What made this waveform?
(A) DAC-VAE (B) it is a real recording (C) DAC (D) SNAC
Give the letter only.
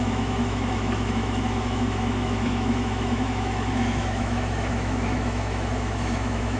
A